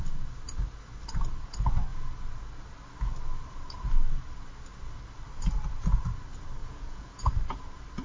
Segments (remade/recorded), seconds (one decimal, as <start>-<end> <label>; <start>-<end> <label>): 0.0-6.6 recorded; 6.6-7.3 remade; 7.3-8.0 recorded